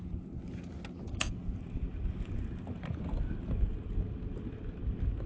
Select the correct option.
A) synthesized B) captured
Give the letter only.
B